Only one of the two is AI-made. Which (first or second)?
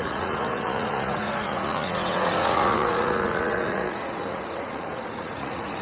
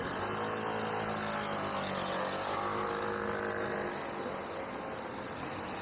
first